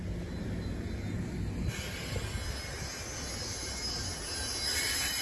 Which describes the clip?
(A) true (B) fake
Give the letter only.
A